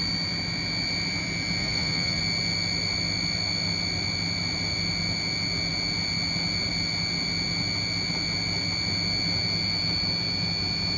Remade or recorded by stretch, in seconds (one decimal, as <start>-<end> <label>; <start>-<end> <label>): 0.0-1.6 recorded; 1.6-2.2 remade; 2.2-11.0 recorded